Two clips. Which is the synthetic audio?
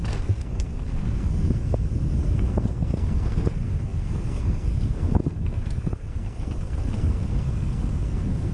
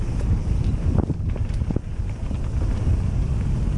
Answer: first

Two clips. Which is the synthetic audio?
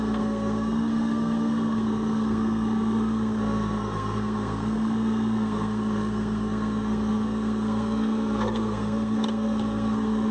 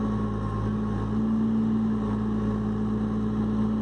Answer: first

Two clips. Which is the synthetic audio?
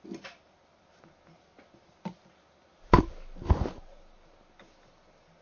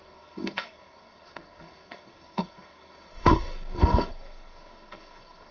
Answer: second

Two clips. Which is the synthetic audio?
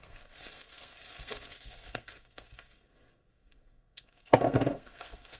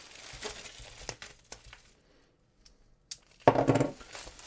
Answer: first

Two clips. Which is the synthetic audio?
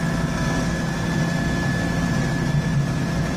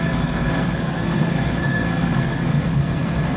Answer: second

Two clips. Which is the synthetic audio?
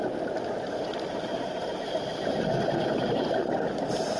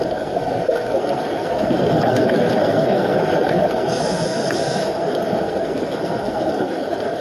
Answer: second